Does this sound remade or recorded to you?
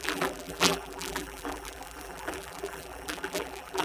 remade